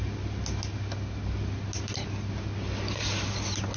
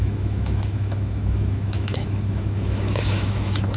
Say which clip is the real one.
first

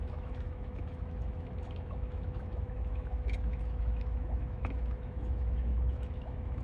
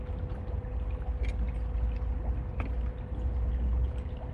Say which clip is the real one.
second